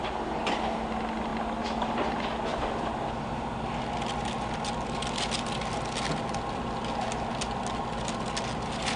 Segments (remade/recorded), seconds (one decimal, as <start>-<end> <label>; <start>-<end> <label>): 0.0-9.0 recorded